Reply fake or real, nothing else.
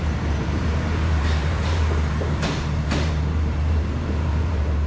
fake